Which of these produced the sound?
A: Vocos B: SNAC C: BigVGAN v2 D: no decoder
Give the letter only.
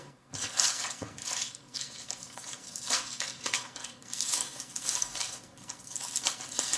B